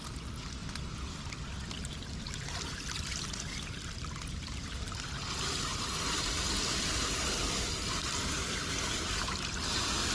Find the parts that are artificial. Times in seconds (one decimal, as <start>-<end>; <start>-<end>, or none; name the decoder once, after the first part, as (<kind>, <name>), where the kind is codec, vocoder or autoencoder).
none